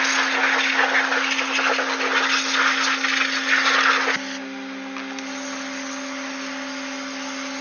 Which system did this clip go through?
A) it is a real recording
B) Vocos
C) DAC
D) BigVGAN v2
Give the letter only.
A